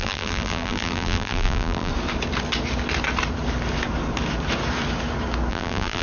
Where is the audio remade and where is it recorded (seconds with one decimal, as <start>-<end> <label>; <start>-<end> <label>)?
0.0-1.9 remade; 1.9-5.5 recorded; 5.5-6.0 remade